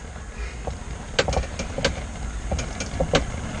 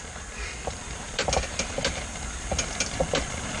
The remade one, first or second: second